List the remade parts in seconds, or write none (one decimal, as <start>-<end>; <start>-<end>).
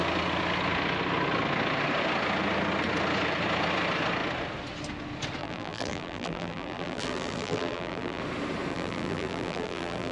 5.4-8.2; 8.7-10.1